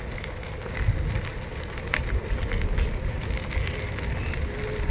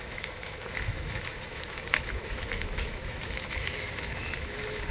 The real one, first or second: first